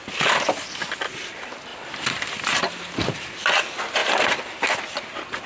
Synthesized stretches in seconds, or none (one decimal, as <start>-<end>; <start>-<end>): 1.7-2.6; 4.0-4.7